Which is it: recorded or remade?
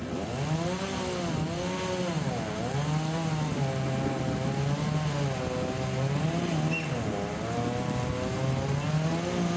recorded